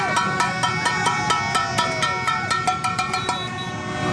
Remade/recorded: recorded